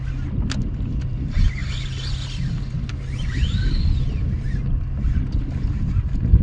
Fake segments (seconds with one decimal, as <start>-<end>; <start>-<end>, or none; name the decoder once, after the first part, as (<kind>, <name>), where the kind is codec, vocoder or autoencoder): none